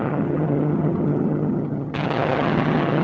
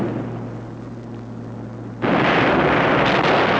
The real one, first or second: second